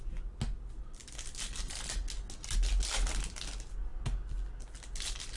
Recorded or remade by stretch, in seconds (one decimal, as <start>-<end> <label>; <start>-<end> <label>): 0.0-5.4 recorded